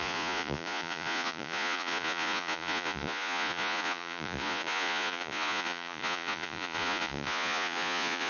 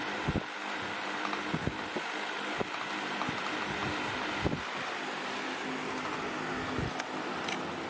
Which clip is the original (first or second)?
second